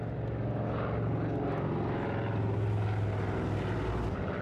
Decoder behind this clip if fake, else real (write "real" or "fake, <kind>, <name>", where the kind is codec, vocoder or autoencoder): real